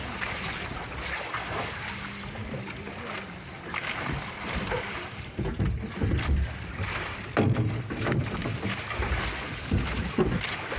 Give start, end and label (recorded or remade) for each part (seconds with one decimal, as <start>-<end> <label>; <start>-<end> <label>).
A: 0.0-2.4 recorded; 2.4-5.4 remade; 5.4-10.8 recorded